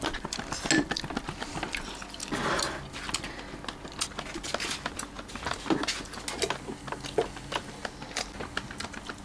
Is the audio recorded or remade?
recorded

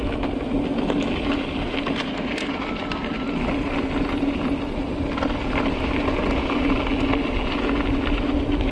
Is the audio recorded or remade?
recorded